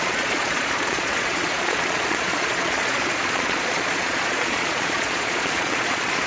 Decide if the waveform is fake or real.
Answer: fake